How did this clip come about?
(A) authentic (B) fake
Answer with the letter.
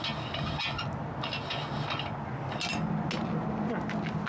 A